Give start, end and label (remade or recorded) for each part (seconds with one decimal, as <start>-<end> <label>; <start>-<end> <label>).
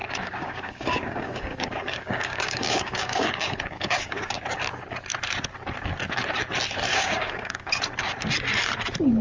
0.0-4.4 remade; 4.4-6.9 recorded; 6.9-7.7 remade; 7.7-9.2 recorded